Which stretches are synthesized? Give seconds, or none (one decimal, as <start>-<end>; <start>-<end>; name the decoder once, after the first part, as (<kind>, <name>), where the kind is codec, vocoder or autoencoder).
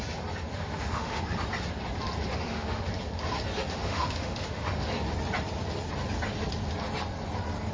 0.5-1.2 (autoencoder, DAC-VAE); 2.3-2.9; 3.7-4.9